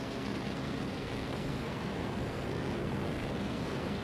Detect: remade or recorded remade